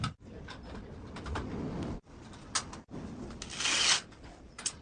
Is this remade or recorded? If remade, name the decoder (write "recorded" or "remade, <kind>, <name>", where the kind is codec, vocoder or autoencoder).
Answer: recorded